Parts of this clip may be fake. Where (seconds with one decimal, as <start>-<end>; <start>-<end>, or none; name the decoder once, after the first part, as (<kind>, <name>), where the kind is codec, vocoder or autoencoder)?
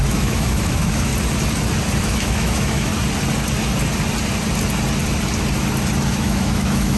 0.0-1.1 (autoencoder, DAC-VAE); 2.0-2.9; 6.1-7.0